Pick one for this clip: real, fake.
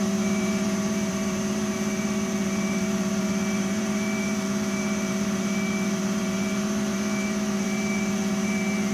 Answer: fake